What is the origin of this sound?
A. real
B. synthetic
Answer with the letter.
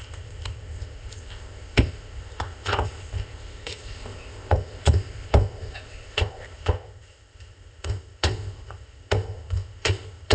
B